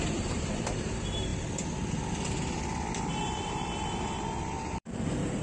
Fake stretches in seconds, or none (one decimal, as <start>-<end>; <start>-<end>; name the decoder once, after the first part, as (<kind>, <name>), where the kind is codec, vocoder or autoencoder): 0.0-1.3 (vocoder, BigVGAN v2); 3.1-5.4